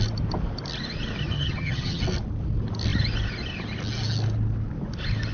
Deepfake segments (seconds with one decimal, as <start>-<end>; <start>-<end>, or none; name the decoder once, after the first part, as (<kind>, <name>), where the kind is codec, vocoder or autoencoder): 1.2-2.0 (vocoder, HiFi-GAN)